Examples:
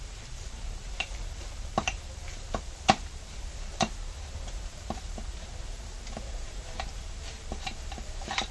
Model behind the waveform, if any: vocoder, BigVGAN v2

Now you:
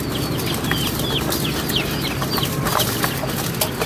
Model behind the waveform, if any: none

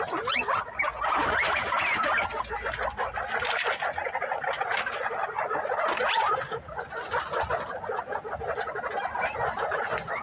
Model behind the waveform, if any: none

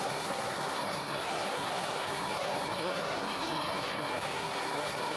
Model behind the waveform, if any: codec, SNAC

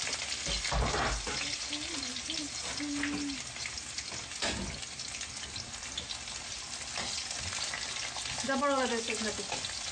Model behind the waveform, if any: none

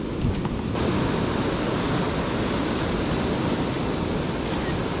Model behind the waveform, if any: none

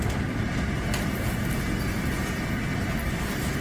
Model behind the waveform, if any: none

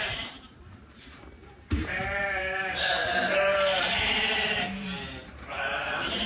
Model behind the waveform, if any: vocoder, BigVGAN v2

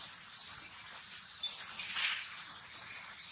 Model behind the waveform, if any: none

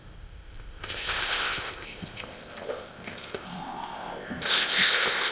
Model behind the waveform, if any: codec, ZipCodec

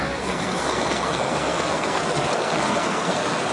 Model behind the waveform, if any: codec, SNAC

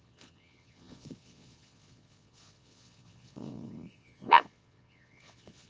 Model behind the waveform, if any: vocoder, Vocos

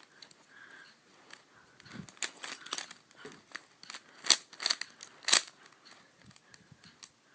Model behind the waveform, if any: none